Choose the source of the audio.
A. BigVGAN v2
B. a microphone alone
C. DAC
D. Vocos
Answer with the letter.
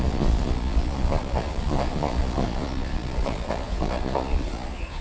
D